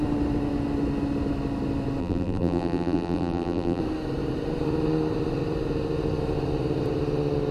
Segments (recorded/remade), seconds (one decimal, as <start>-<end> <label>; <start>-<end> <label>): 0.0-2.0 recorded; 2.0-3.8 remade; 3.8-7.5 recorded